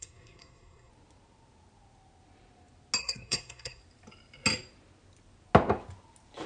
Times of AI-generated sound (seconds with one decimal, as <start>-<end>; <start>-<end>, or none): 0.0-0.9; 3.0-3.8